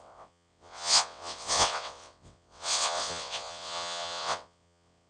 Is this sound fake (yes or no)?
yes